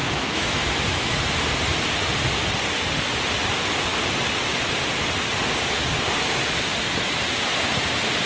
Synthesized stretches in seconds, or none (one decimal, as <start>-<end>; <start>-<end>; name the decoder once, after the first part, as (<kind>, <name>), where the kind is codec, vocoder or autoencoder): 0.0-1.2 (autoencoder, DAC-VAE)